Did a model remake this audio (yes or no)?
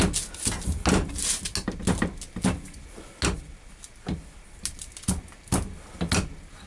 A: no